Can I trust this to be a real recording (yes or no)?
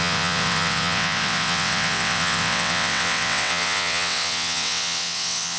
no